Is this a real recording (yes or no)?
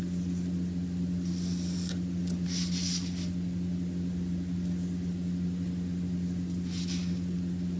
yes